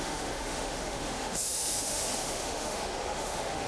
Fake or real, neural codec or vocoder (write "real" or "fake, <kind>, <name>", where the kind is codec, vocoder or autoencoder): fake, autoencoder, DAC-VAE